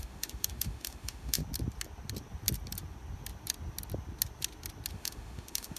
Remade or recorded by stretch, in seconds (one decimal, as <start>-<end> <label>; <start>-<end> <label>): 0.0-1.4 remade; 1.4-4.9 recorded; 4.9-5.8 remade